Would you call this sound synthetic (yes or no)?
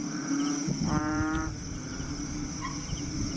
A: yes